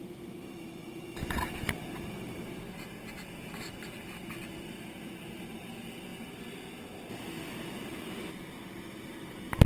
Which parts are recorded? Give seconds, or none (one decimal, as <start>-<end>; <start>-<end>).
0.0-9.7